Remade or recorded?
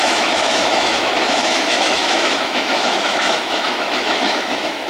remade